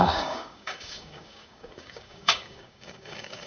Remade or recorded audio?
remade